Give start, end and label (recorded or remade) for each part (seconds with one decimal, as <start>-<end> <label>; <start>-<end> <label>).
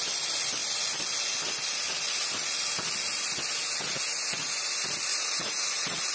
0.0-4.1 recorded; 4.1-4.6 remade; 4.6-5.1 recorded; 5.1-6.1 remade